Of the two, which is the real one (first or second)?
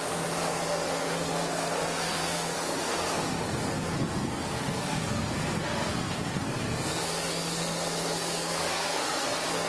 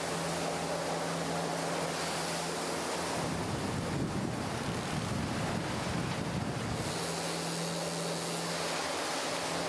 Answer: second